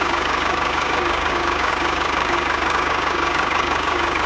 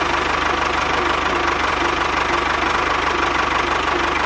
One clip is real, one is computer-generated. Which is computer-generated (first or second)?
first